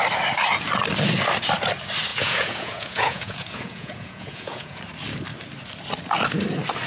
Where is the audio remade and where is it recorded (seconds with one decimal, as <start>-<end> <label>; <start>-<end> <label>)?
0.0-2.1 recorded; 2.1-4.8 remade; 4.8-6.9 recorded